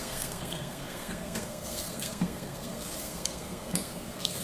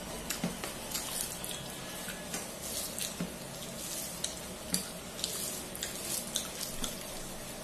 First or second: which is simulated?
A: first